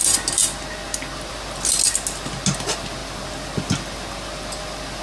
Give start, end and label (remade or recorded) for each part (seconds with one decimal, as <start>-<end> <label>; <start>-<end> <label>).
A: 0.0-5.0 recorded